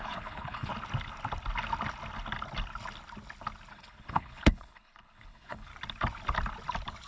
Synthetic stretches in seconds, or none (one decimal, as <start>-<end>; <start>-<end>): 0.0-0.7; 3.7-5.7

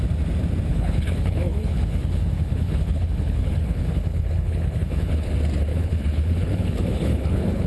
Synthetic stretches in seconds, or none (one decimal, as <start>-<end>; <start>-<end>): 0.7-5.3; 5.7-7.7

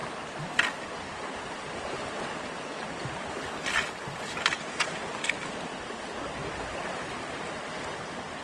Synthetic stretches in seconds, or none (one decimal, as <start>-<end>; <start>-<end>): none

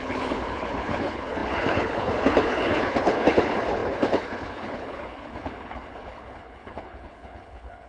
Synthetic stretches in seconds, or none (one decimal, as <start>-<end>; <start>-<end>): 0.0-7.9

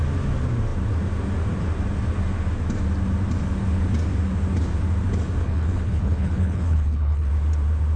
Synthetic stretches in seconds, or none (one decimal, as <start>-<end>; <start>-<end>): 5.4-7.3

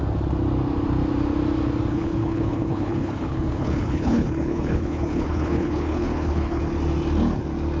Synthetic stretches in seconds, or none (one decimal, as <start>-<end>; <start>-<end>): 1.9-6.6

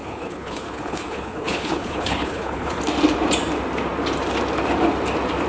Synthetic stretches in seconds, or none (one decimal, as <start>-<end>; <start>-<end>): 0.0-2.8

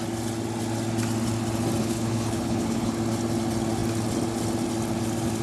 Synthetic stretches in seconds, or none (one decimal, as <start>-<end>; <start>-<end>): 1.8-2.9